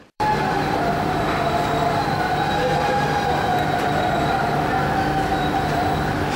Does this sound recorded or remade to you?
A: remade